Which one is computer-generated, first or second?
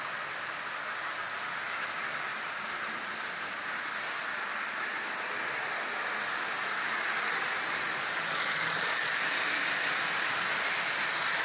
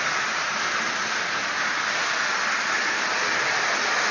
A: second